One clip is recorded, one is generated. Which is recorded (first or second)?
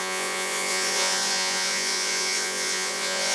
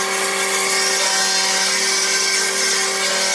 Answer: second